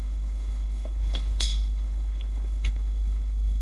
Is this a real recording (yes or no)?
no